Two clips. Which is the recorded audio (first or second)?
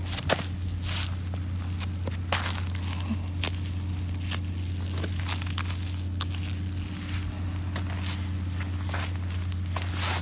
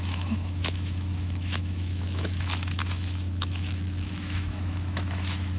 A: first